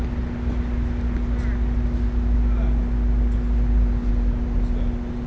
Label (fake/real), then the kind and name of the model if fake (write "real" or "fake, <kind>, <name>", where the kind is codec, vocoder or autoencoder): real